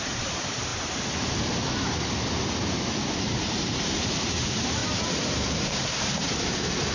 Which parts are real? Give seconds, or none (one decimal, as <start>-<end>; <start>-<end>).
0.7-3.2; 4.8-5.3